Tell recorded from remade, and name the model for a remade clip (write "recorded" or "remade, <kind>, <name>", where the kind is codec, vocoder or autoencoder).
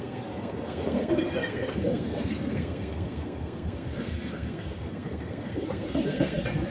remade, codec, SNAC